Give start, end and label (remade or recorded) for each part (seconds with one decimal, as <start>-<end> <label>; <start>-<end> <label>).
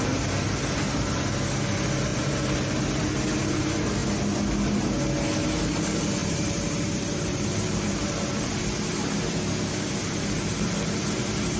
0.0-2.1 recorded; 2.1-2.8 remade; 2.8-6.2 recorded; 6.2-8.6 remade; 8.6-10.0 recorded; 10.0-11.6 remade